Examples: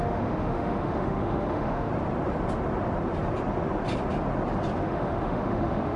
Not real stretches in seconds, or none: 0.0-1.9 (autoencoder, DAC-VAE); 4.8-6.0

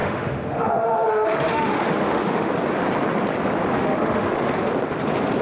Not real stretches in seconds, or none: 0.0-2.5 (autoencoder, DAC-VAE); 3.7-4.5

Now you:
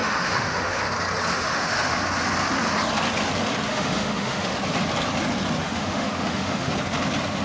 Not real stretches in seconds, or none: 0.0-0.8 (autoencoder, DAC-VAE); 1.3-2.0; 3.7-4.5; 5.6-6.7

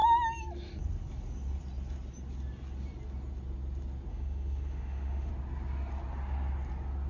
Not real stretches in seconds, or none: 4.1-5.3 (autoencoder, DAC-VAE)

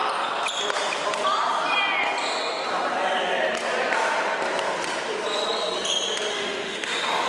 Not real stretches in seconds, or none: 6.3-7.3 (autoencoder, DAC-VAE)

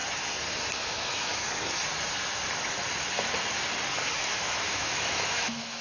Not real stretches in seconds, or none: 0.6-1.3 (autoencoder, DAC-VAE); 4.1-5.8